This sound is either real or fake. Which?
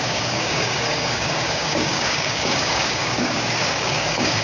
fake